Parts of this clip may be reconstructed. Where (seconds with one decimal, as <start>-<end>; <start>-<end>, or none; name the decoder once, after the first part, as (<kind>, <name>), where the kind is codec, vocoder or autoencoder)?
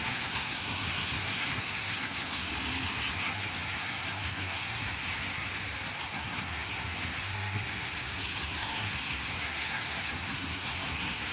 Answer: 0.0-2.5 (codec, SNAC); 3.1-5.5; 6.1-11.3